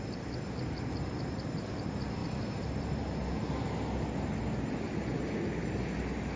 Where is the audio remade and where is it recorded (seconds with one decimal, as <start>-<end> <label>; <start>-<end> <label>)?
0.0-6.4 recorded